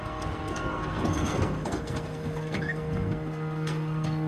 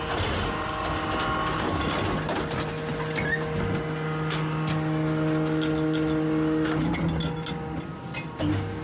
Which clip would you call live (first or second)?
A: second